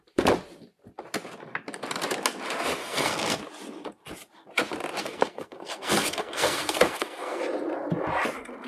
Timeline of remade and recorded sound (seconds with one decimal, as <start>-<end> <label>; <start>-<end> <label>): 0.0-2.8 recorded; 2.8-3.4 remade; 3.4-5.0 recorded; 5.0-7.4 remade; 7.4-8.7 recorded